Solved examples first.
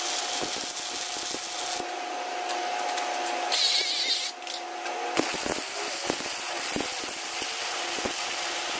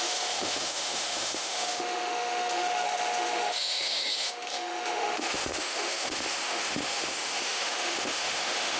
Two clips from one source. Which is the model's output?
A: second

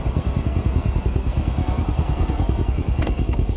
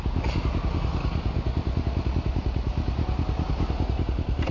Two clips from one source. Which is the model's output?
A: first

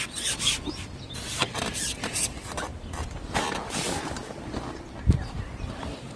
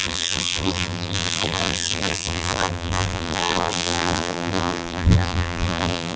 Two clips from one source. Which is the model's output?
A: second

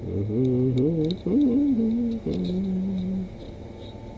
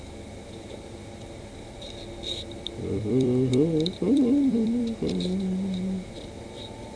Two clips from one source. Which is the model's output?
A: second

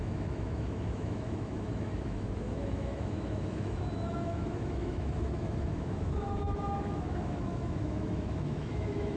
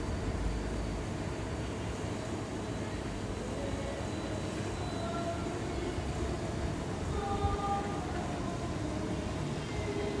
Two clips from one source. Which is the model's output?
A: first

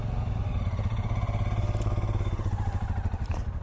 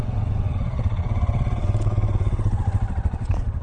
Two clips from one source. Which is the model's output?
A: second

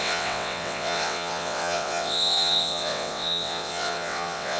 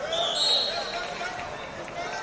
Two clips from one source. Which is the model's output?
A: first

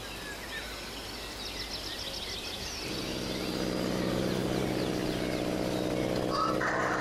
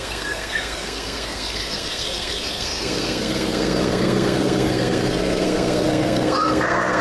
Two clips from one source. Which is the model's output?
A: second